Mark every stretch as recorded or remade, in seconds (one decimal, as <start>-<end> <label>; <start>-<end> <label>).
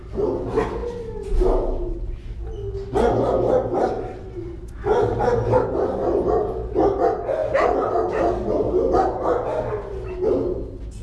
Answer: 0.0-11.0 recorded